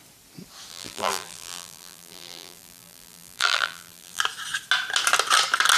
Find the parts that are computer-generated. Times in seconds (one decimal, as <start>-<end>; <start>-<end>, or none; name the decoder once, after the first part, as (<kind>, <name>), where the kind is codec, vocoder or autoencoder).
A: 0.7-4.2 (vocoder, BigVGAN v2)